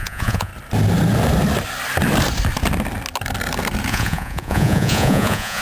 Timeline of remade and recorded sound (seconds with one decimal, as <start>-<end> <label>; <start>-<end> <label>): 0.0-0.5 remade; 0.5-3.9 recorded; 3.9-5.6 remade